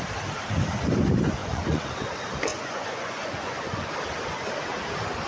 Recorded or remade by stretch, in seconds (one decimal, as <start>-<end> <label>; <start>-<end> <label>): 0.0-1.4 recorded; 1.4-2.0 remade; 2.0-2.5 recorded; 2.5-3.9 remade; 3.9-5.3 recorded